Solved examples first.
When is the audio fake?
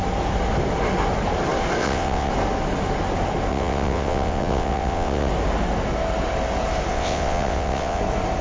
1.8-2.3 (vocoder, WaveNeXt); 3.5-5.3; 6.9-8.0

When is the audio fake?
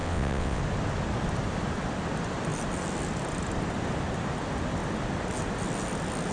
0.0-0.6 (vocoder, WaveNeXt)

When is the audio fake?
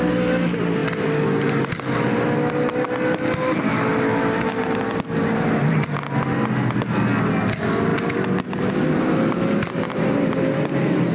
none